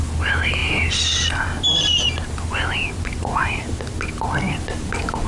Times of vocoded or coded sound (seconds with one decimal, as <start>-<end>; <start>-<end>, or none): none